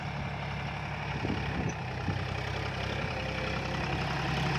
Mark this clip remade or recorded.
recorded